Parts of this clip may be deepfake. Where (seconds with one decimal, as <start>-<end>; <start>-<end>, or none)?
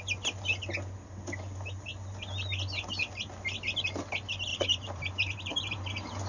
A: 4.5-6.3